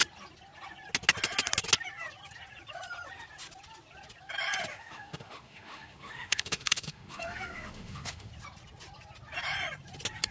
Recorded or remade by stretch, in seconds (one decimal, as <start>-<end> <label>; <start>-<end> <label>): 0.0-4.7 recorded; 4.7-8.3 remade; 8.3-10.3 recorded